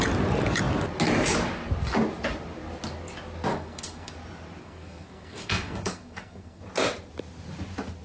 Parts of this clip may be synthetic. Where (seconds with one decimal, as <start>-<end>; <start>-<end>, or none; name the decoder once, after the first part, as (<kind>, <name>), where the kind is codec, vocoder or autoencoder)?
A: 3.5-4.1 (codec, SNAC); 4.6-6.6